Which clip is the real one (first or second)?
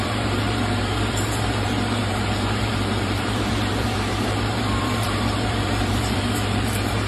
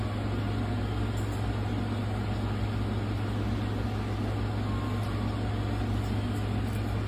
second